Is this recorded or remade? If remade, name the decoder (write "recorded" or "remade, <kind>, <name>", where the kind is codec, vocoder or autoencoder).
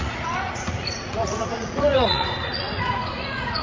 remade, vocoder, Vocos